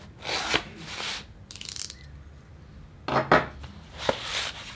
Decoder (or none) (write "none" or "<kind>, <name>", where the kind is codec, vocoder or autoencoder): none